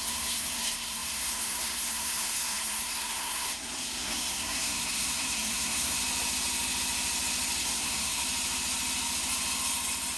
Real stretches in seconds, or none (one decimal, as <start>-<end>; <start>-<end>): 6.0-7.6; 8.2-10.2